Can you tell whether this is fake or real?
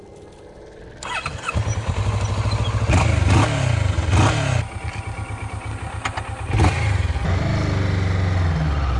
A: real